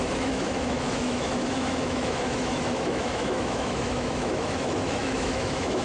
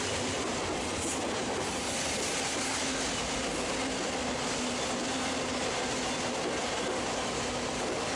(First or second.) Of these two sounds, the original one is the second